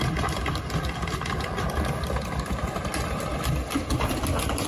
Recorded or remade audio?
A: recorded